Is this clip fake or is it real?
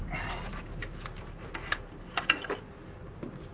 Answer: real